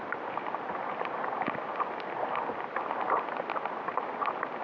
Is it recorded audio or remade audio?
recorded